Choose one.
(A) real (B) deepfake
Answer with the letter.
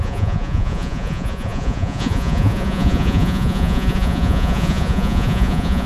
B